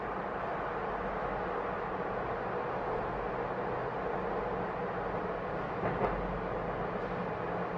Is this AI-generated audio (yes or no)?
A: no